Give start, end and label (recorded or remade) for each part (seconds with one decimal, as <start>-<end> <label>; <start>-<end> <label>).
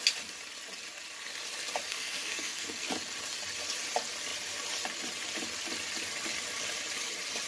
0.0-1.9 recorded; 1.9-2.9 remade; 2.9-7.5 recorded